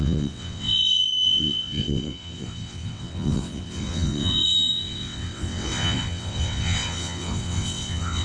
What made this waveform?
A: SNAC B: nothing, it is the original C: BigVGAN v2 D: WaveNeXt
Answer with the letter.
D